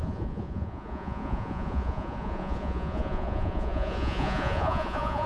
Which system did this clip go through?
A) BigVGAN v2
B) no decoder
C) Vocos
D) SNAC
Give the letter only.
C